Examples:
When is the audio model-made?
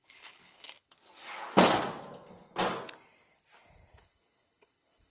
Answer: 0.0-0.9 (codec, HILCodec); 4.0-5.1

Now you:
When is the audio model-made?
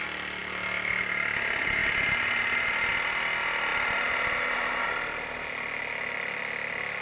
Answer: none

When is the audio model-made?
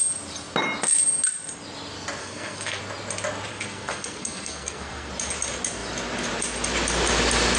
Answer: 2.2-2.8 (codec, SNAC); 3.5-5.1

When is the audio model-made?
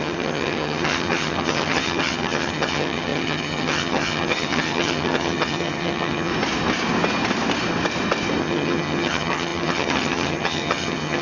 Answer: 0.0-6.3 (vocoder, HiFi-GAN); 8.4-11.2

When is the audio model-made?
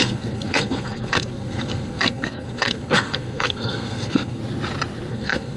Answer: 0.0-4.4 (codec, SNAC); 5.1-5.6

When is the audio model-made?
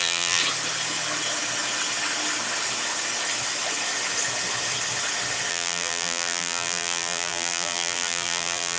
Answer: 0.0-0.4 (vocoder, BigVGAN v2); 5.5-8.8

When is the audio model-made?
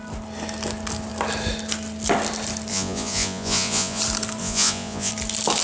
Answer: 2.7-4.0 (vocoder, Vocos); 4.4-5.1